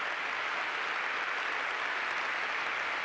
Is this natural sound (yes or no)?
yes